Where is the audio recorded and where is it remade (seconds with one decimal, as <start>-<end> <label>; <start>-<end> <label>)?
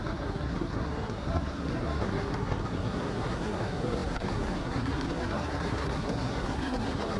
0.0-7.2 remade